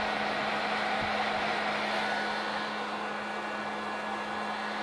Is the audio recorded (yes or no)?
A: yes